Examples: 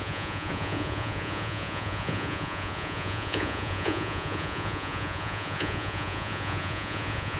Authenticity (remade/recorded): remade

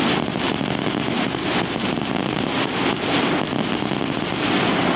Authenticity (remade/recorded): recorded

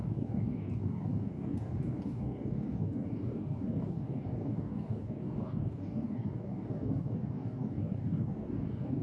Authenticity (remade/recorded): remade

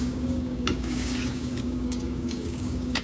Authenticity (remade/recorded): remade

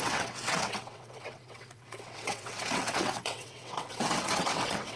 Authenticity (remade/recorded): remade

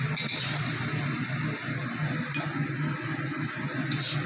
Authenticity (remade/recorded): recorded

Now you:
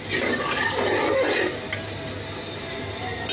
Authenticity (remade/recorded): recorded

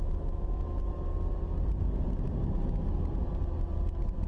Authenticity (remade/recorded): recorded